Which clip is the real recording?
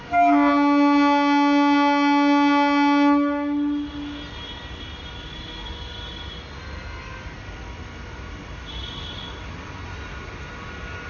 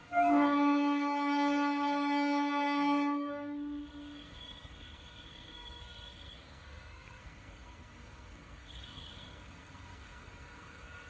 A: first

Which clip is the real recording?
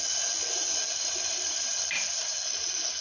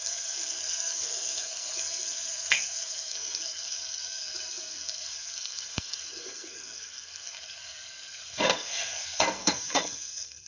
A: first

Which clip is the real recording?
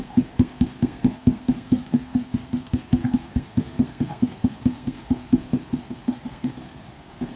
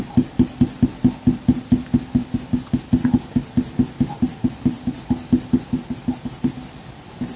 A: second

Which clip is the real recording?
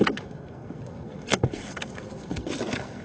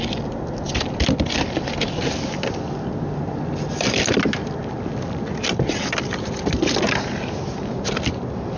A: second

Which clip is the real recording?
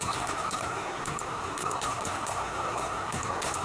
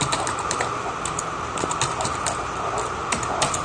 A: second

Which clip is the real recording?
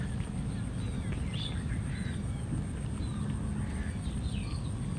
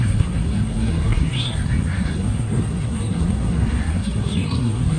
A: first